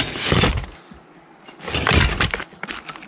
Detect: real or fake real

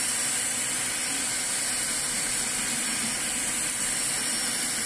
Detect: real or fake real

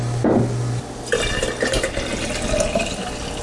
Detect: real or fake real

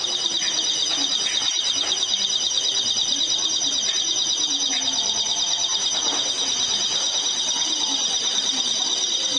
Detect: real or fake real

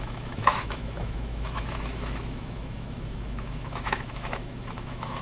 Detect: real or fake fake